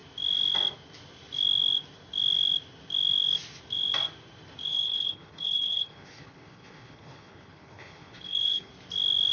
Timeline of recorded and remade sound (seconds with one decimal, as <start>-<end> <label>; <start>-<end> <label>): 0.0-4.7 recorded; 4.7-8.7 remade; 8.7-9.3 recorded